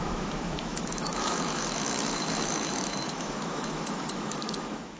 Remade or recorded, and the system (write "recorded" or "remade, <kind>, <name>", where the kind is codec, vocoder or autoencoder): remade, autoencoder, DAC-VAE